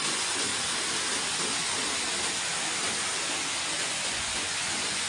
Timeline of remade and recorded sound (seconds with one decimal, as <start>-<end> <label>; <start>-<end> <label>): 0.0-0.5 remade; 0.5-3.6 recorded; 3.6-5.1 remade